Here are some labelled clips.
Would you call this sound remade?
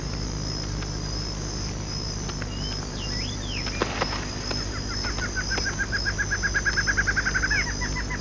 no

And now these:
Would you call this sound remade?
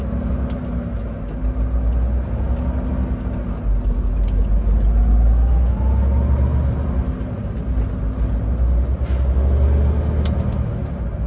no